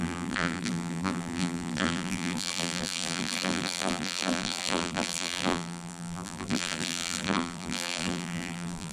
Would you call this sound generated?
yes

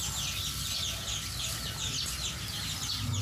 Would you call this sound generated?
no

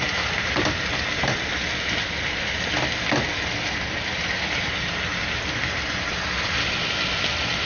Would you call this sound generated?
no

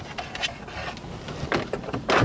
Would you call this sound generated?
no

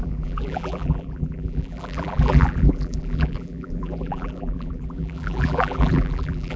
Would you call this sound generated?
yes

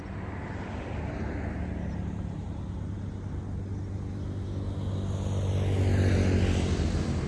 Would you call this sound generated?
no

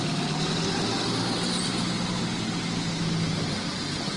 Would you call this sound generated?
yes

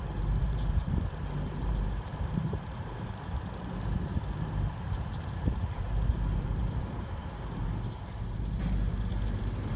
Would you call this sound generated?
yes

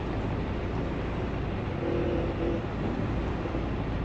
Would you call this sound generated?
no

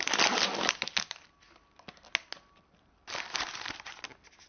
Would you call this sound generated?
no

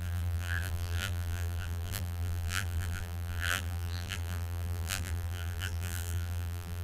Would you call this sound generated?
yes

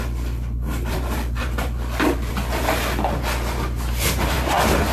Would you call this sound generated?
no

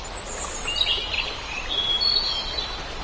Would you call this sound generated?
no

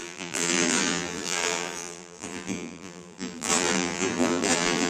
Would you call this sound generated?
yes